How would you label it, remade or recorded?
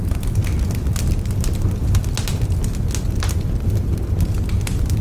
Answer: recorded